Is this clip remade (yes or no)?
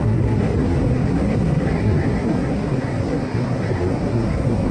yes